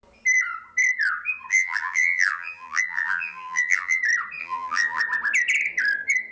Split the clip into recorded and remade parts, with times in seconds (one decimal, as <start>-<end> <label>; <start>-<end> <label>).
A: 0.0-1.5 recorded; 1.5-4.0 remade; 4.0-4.4 recorded; 4.4-5.0 remade; 5.0-6.3 recorded